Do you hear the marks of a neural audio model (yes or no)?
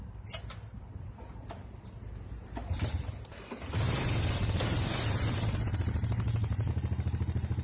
no